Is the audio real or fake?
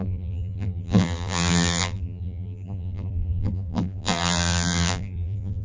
fake